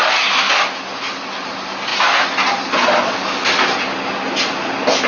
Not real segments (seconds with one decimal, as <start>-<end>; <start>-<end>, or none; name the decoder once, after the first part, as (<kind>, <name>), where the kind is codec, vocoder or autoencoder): 0.0-0.5 (autoencoder, DAC-VAE)